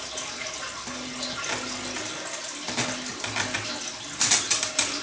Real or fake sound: real